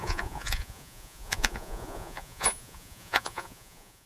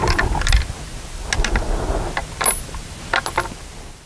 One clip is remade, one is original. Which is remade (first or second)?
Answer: first